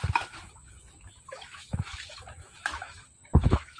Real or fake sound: fake